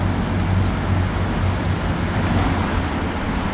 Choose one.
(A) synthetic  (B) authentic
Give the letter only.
B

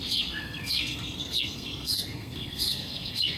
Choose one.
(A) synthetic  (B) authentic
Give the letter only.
A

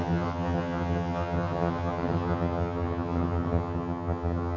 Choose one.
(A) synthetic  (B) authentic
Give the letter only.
A